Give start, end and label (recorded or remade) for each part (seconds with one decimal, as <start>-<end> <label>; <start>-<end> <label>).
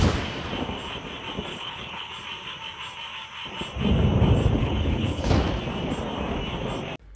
0.0-1.5 recorded; 1.5-2.1 remade; 2.1-4.6 recorded; 4.6-5.3 remade; 5.3-7.2 recorded